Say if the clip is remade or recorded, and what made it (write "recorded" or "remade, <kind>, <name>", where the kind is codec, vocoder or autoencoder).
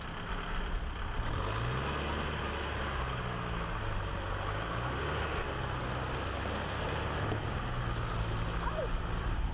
recorded